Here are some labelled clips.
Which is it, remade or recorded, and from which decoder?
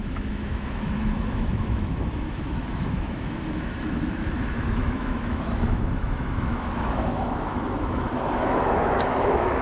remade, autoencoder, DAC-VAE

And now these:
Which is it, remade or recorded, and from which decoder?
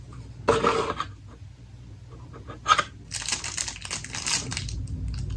recorded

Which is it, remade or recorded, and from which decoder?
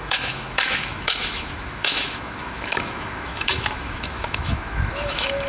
remade, autoencoder, DAC-VAE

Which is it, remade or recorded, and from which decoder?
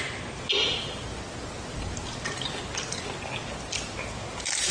recorded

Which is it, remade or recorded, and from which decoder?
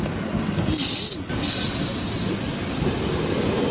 recorded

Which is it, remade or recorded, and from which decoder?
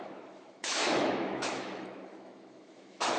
remade, autoencoder, DAC-VAE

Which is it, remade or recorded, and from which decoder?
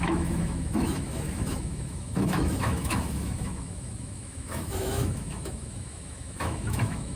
remade, autoencoder, DAC-VAE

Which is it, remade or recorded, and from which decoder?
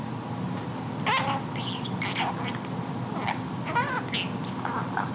recorded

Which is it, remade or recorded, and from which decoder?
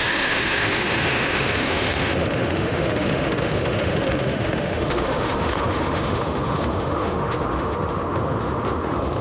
remade, autoencoder, DAC-VAE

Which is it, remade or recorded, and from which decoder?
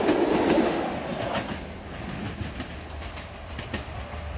recorded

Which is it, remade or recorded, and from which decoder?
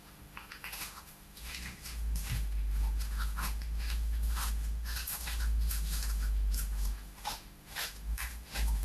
remade, autoencoder, DAC-VAE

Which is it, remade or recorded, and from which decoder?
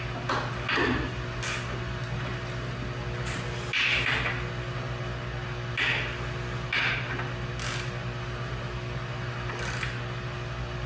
recorded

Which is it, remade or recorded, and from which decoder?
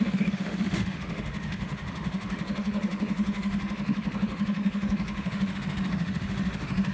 remade, autoencoder, DAC-VAE